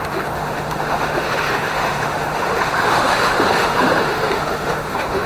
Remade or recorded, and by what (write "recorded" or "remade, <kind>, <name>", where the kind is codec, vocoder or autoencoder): remade, autoencoder, DAC-VAE